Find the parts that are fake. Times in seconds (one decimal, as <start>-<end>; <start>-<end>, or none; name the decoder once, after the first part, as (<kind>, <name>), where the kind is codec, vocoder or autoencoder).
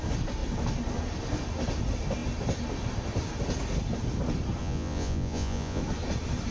4.6-5.8 (vocoder, Vocos)